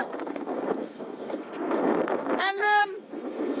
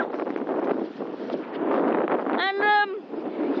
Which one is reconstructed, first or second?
first